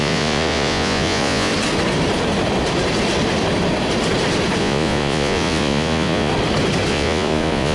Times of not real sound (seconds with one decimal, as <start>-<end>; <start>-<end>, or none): 0.0-1.5; 4.6-6.3; 6.9-7.7